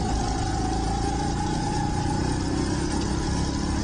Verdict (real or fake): real